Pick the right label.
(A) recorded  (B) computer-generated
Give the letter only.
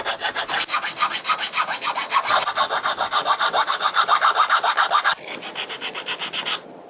A